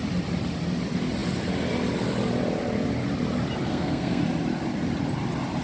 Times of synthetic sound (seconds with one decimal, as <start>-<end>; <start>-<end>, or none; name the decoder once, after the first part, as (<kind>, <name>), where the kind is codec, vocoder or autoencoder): 3.7-4.2 (codec, SNAC)